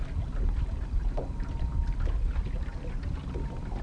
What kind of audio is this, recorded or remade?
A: recorded